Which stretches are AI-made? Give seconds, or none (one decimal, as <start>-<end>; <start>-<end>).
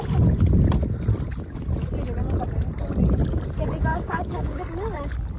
3.9-4.6